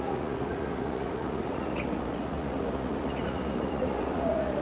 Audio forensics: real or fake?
fake